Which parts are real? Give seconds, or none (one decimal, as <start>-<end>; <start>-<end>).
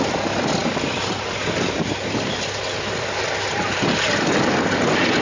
0.0-5.2